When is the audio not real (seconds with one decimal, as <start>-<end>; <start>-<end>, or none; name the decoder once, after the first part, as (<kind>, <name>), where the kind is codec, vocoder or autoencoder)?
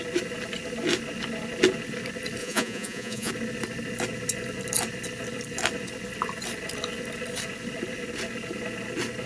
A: 2.4-3.3 (vocoder, Vocos)